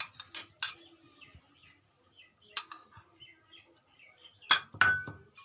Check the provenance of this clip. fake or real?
real